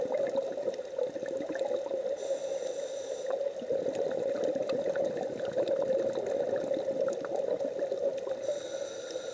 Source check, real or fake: real